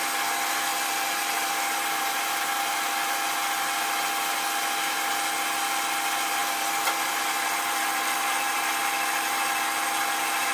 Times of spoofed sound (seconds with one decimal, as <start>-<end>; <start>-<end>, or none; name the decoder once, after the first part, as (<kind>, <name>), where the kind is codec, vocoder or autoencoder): 0.7-2.1 (vocoder, BigVGAN v2); 6.4-8.8